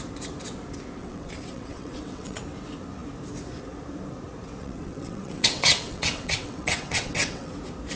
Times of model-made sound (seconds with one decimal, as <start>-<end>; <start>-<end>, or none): 1.0-2.4; 4.6-7.5